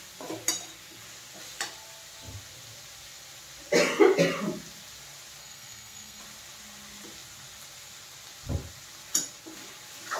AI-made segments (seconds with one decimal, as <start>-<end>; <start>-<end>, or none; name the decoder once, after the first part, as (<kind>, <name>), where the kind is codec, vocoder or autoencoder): 5.4-6.2 (codec, SNAC)